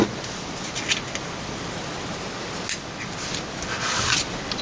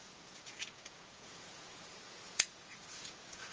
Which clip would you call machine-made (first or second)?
second